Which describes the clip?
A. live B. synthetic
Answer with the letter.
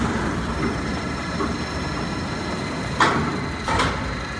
B